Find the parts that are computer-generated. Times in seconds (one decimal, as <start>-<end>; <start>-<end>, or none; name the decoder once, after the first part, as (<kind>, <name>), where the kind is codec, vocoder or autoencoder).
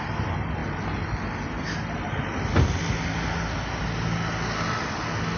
none